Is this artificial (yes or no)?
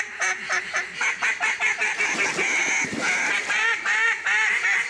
no